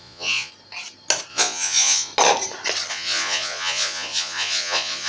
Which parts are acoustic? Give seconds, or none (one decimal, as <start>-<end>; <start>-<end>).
0.5-1.3; 2.1-2.9